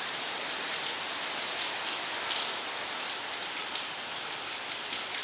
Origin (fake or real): real